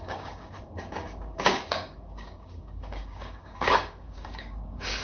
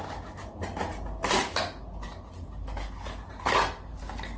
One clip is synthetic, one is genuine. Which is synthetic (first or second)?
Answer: first